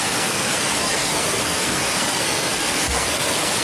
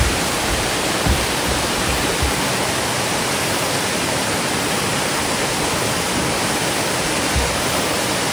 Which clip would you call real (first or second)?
second